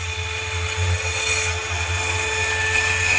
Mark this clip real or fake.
real